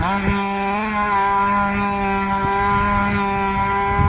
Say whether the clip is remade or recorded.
recorded